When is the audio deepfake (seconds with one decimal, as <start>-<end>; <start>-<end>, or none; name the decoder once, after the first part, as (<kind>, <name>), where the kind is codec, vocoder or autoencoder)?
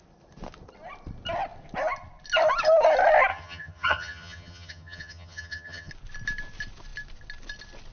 3.3-5.9 (vocoder, HiFi-GAN)